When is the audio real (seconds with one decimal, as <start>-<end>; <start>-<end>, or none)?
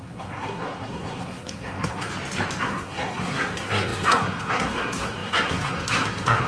2.1-2.6